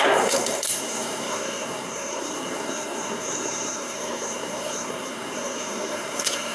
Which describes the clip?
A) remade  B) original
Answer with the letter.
A